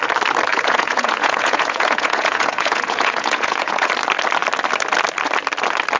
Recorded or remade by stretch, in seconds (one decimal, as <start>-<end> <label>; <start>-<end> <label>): 0.0-0.5 recorded; 0.5-3.9 remade; 3.9-6.0 recorded